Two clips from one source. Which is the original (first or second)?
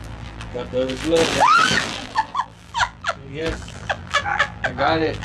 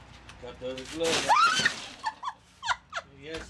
second